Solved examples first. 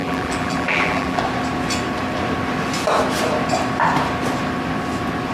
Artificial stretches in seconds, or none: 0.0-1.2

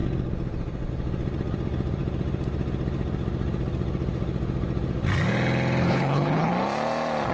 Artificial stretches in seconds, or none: 5.8-6.5

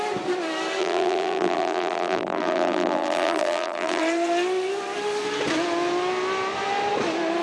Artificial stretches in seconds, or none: 0.8-4.0

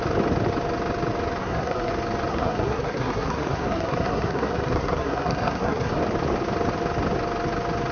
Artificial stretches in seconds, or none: 1.4-1.9; 2.3-6.0